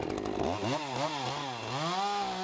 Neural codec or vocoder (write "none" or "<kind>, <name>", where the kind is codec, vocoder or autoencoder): none